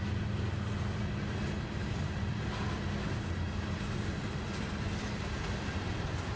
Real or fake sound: real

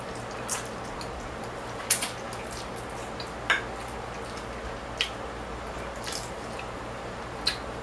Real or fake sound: real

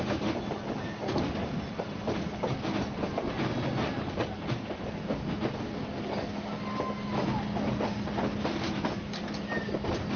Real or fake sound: real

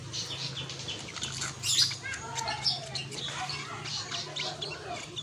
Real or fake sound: real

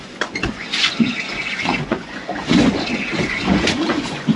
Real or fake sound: fake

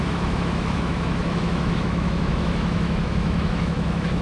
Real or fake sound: fake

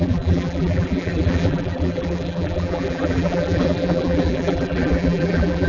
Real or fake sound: fake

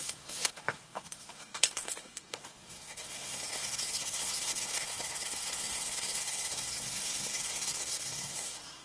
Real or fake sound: fake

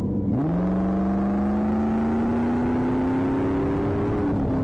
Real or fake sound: real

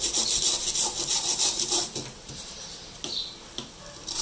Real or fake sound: real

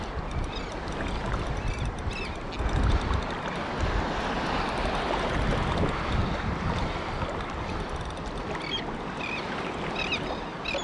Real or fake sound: real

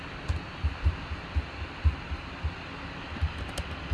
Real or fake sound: real